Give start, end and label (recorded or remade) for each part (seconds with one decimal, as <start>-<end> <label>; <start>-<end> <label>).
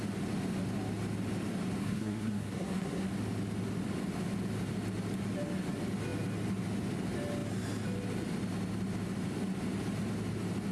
0.0-1.8 recorded; 1.8-3.1 remade; 3.1-10.7 recorded